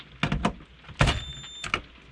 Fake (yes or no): no